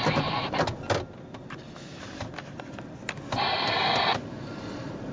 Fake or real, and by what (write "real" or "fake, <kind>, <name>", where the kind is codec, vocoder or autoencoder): real